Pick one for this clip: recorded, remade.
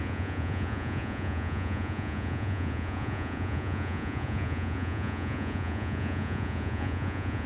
remade